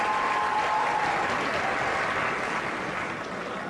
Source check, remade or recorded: recorded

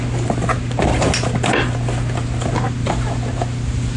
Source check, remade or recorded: recorded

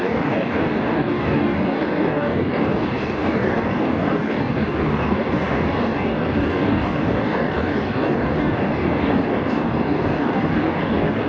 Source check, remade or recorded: remade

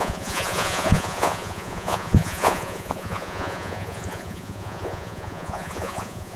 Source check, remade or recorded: remade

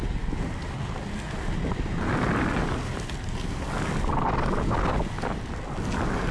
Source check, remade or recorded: recorded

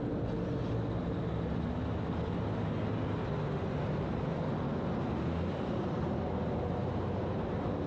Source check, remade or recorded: recorded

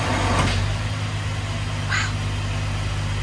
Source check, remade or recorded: recorded